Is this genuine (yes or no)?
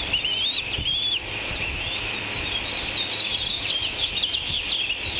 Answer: no